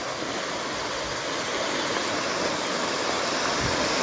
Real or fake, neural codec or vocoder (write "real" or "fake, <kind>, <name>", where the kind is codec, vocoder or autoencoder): real